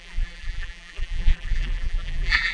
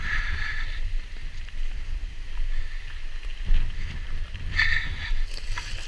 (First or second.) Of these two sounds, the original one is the second